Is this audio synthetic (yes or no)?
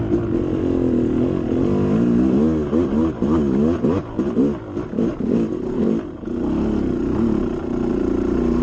no